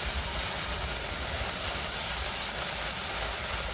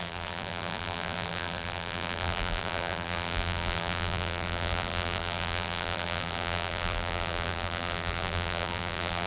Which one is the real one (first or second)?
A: first